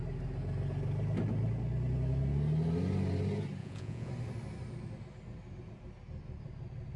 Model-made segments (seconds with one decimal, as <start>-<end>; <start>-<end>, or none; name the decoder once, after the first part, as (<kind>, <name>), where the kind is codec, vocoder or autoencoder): 3.6-4.1 (vocoder, Vocos)